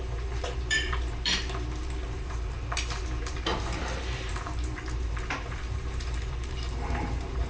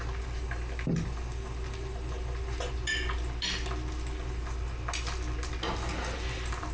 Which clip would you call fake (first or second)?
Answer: first